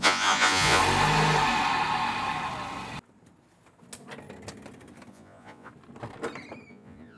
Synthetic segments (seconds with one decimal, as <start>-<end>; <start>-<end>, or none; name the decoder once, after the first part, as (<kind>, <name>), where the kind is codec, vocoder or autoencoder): 0.0-0.8 (vocoder, Vocos); 5.1-5.7; 6.7-7.2